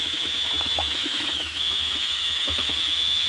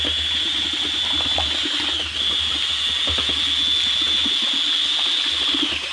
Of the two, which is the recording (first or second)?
second